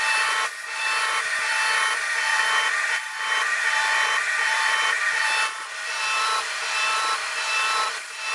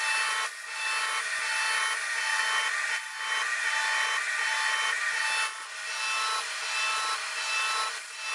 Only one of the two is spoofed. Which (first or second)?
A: first